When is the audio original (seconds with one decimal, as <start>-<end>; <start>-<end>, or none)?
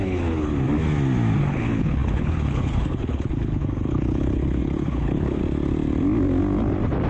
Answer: 0.5-1.4; 5.4-7.1